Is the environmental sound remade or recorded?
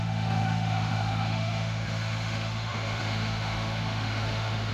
remade